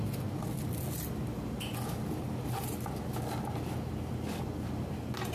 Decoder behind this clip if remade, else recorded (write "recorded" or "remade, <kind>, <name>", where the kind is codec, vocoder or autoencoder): recorded